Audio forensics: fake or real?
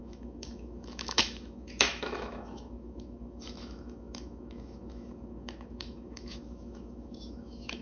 fake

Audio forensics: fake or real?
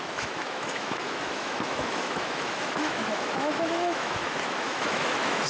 fake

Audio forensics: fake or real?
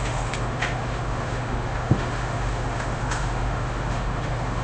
fake